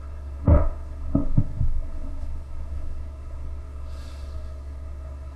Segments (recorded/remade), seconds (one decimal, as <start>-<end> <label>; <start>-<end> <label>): 0.0-5.4 remade